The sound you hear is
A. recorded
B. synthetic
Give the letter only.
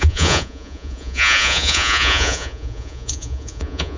B